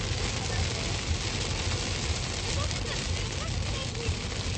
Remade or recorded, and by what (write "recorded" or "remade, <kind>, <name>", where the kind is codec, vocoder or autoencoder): recorded